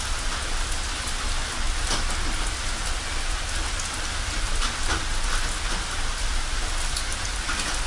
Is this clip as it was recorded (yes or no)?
yes